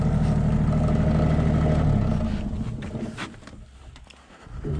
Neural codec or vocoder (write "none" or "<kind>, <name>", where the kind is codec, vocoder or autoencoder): none